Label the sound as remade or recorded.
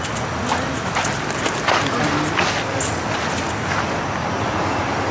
recorded